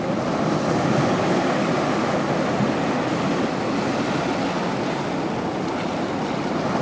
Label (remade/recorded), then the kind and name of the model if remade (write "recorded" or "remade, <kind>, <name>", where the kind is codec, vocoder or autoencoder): recorded